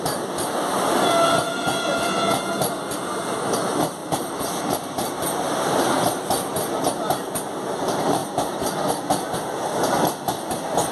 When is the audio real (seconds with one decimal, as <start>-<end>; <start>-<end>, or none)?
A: 0.0-4.0; 5.1-10.9